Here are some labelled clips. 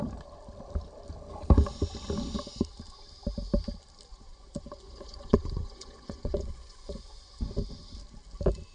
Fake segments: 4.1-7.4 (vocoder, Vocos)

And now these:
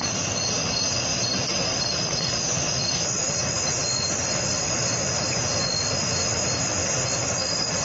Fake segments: 1.1-3.2 (vocoder, BigVGAN v2); 3.8-4.7; 6.8-7.8

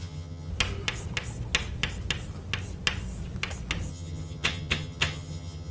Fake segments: 0.0-0.5 (vocoder, HiFi-GAN); 3.9-5.7

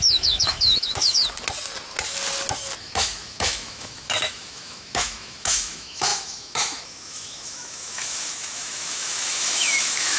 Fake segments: 0.0-1.2 (autoencoder, DAC-VAE); 2.8-10.2

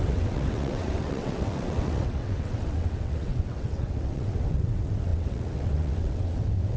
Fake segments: 0.0-6.8 (vocoder, WaveNeXt)

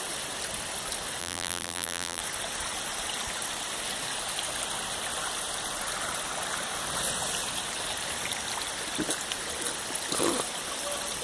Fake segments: 1.2-2.2 (vocoder, BigVGAN v2)

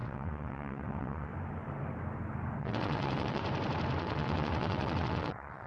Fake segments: 0.0-1.3 (vocoder, WaveNeXt); 2.6-3.4; 4.0-5.7

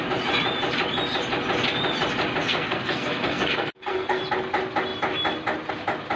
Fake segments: 2.4-4.2 (codec, SNAC)